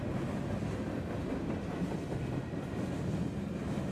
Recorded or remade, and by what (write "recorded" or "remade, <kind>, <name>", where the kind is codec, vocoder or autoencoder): recorded